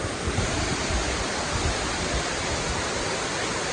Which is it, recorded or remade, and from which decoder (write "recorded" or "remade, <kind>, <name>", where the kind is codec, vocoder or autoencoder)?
recorded